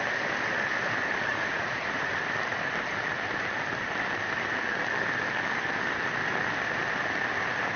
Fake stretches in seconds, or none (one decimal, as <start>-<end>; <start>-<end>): 1.3-2.1

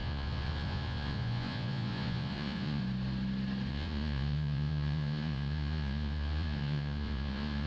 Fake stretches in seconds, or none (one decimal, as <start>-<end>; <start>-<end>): 0.0-2.8; 3.7-7.7

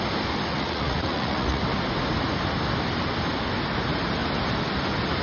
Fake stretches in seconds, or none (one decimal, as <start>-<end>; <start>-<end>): 0.5-1.6

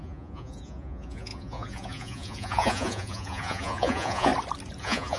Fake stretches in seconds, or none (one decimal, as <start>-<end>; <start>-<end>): 0.0-4.3; 4.8-5.2

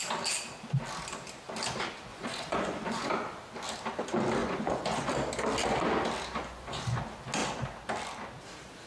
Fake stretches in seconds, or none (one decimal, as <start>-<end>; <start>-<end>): 2.1-3.1; 4.4-5.1; 6.4-7.0

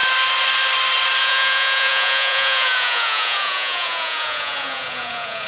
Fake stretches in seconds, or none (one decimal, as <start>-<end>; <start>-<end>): 1.2-5.5

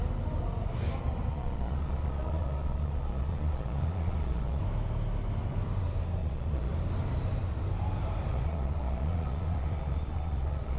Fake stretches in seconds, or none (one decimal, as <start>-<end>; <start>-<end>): 1.3-4.6; 6.2-6.7; 8.3-10.8

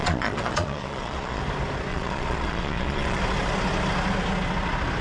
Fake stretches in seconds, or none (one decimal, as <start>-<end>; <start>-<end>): 0.0-1.4; 1.9-3.2